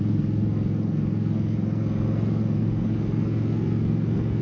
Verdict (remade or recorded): remade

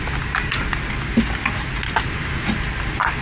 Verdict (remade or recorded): recorded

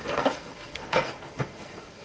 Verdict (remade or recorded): remade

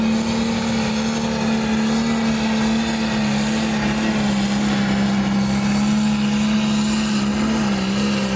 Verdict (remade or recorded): recorded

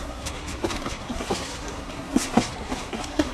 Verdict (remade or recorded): remade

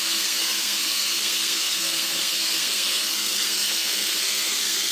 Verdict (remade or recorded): remade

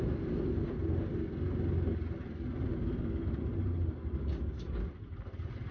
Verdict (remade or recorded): recorded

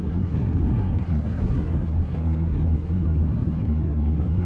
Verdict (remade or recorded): remade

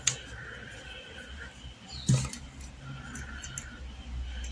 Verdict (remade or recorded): recorded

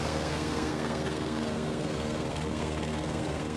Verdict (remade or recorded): remade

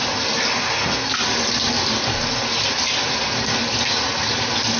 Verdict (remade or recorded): recorded